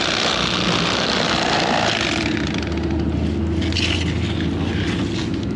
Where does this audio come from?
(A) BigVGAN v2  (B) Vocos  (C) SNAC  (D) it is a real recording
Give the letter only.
D